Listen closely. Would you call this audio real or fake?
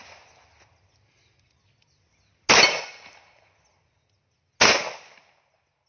real